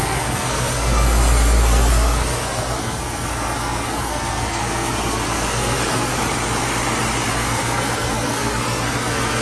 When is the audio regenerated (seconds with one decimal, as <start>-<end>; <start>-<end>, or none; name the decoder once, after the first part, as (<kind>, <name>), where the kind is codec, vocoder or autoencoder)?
0.0-6.1 (codec, SNAC); 7.3-9.4